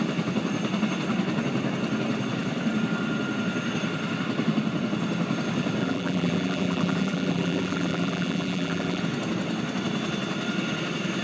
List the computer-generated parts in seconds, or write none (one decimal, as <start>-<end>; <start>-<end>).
5.8-9.0